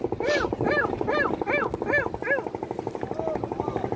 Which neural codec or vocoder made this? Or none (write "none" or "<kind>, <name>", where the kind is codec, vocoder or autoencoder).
none